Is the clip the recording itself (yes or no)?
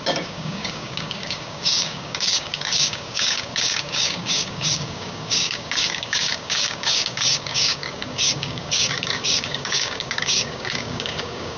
no